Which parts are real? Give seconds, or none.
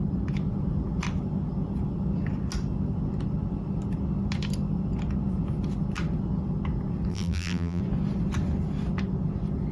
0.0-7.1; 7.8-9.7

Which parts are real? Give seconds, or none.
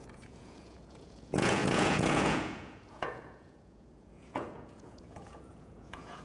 none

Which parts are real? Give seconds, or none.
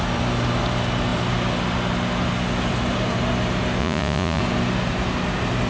0.0-3.8; 4.4-5.7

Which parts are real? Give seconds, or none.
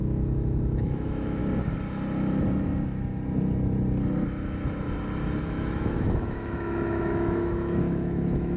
1.4-5.4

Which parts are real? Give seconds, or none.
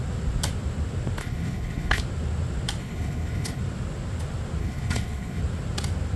0.0-1.2; 2.0-2.8; 3.6-4.6; 5.4-6.2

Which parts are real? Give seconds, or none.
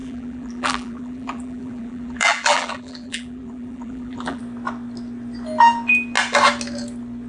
4.4-7.3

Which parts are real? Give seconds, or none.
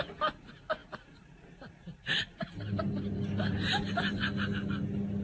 0.0-5.2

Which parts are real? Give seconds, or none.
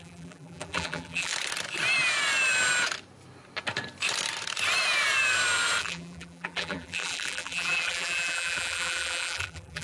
1.3-5.8